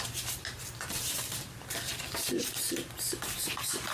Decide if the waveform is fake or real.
real